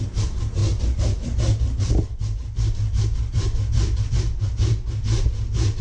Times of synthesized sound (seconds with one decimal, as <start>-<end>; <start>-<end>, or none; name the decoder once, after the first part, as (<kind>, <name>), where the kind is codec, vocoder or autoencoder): none